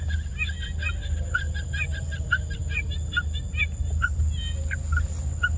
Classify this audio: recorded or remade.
recorded